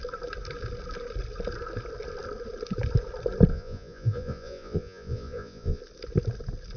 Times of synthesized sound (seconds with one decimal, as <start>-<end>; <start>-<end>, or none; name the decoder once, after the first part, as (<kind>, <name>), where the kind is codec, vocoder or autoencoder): 3.5-5.8 (vocoder, Vocos)